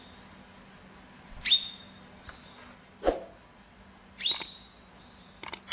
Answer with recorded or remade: recorded